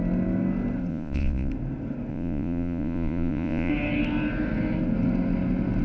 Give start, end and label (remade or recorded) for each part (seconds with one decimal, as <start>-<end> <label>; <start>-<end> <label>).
0.0-0.9 recorded; 0.9-1.5 remade; 1.5-2.1 recorded; 2.1-3.7 remade; 3.7-5.8 recorded

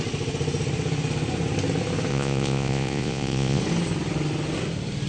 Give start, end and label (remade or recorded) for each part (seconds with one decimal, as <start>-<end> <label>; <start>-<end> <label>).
0.0-2.1 recorded; 2.1-3.6 remade; 3.6-5.1 recorded

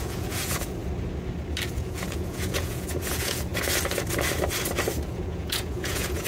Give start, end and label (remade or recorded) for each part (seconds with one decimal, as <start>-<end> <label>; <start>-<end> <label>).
0.0-0.8 remade; 0.8-1.7 recorded; 1.7-3.5 remade; 3.5-5.1 recorded; 5.1-6.3 remade

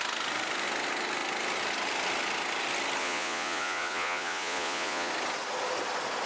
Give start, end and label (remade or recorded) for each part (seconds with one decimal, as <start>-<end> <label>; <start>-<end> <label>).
0.0-3.0 recorded; 3.0-5.1 remade; 5.1-6.3 recorded

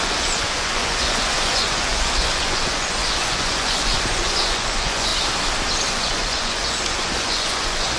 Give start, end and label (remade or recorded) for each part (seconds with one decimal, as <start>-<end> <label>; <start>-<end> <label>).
0.0-5.1 remade; 5.1-5.9 recorded; 5.9-8.0 remade

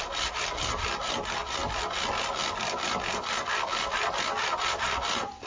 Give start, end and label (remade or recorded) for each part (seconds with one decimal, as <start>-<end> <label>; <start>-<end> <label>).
0.0-5.5 recorded